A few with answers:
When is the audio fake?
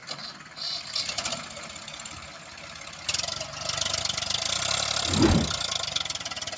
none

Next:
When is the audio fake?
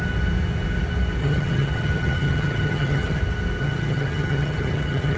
1.2-3.2 (vocoder, HiFi-GAN); 3.6-5.2